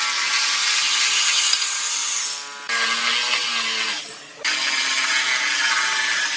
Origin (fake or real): real